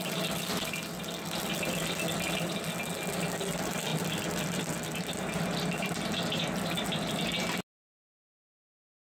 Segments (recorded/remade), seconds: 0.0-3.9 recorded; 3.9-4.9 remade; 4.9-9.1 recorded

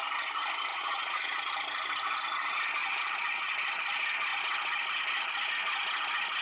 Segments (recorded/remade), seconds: 0.0-0.7 recorded; 0.7-1.4 remade; 1.4-2.8 recorded; 2.8-3.5 remade; 3.5-6.4 recorded

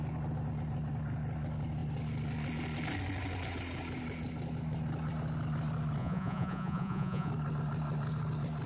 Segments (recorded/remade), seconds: 0.0-6.0 recorded; 6.0-7.3 remade; 7.3-8.7 recorded